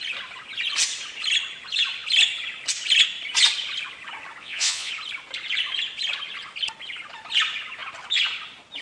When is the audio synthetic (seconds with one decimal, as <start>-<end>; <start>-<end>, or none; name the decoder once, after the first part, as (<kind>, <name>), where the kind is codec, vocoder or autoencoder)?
4.4-4.9 (vocoder, Vocos)